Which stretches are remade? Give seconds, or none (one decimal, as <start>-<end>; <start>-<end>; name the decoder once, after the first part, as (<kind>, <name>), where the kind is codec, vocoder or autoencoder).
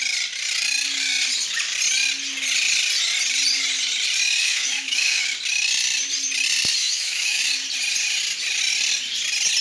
4.4-5.2 (autoencoder, DAC-VAE); 6.8-7.4